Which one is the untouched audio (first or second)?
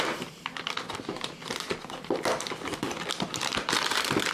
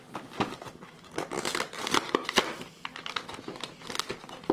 second